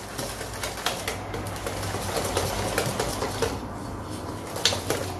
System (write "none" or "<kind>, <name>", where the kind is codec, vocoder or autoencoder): none